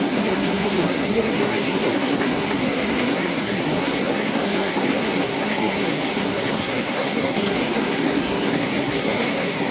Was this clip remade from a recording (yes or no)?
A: yes